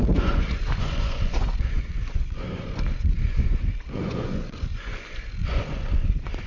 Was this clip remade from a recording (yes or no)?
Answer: yes